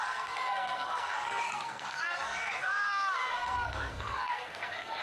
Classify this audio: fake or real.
fake